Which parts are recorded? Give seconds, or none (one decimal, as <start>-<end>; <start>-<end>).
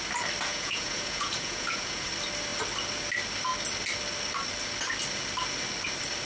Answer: 0.0-0.5; 2.1-6.2